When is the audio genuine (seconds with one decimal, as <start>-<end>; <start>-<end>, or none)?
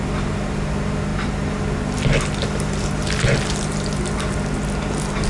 0.0-5.3